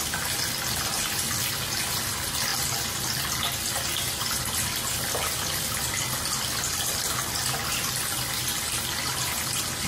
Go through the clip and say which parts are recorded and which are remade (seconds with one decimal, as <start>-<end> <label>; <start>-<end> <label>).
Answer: 0.0-9.9 recorded